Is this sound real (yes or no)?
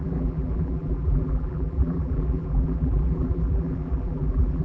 no